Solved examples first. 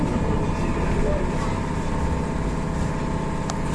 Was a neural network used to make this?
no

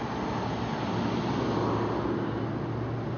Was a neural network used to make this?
no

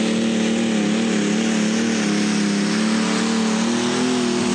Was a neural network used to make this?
no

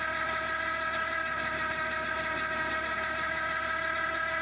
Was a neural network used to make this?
no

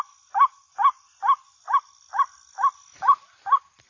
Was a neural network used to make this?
no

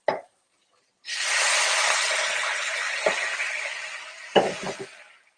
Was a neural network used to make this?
no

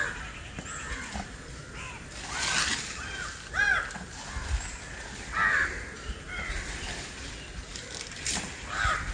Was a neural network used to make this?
no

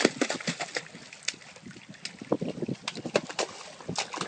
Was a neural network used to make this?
no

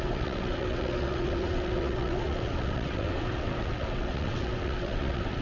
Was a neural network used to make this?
yes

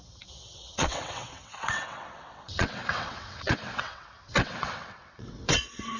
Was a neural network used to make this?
yes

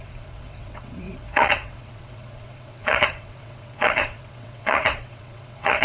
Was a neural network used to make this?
yes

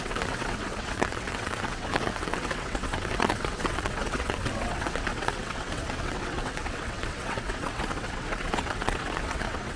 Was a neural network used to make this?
yes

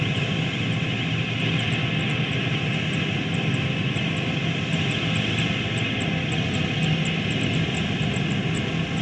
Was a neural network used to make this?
no